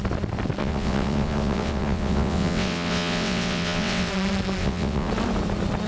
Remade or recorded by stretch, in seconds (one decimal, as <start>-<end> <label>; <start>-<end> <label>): 0.0-0.6 recorded; 0.6-4.1 remade; 4.1-4.6 recorded; 4.6-5.1 remade; 5.1-5.9 recorded